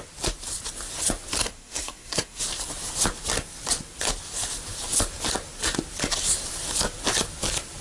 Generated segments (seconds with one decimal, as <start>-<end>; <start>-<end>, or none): 1.4-2.4